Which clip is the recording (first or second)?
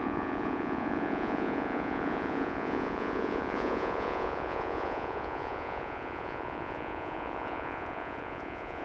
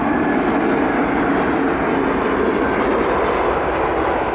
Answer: second